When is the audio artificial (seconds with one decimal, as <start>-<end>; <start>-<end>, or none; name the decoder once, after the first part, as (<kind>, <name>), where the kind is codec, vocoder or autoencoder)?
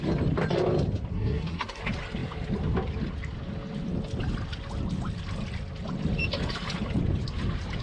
1.1-1.8 (codec, SNAC)